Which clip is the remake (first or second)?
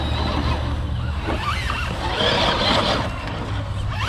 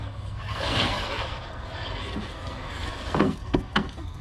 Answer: second